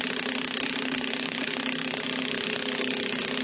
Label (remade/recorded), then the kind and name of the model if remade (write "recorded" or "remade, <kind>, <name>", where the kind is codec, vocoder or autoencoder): recorded